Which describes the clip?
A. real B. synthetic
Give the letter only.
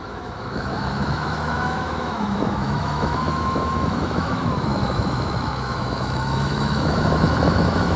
B